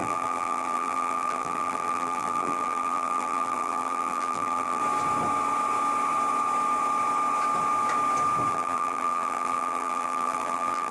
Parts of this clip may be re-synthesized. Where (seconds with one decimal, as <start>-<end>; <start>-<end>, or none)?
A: 0.0-4.8; 8.5-10.9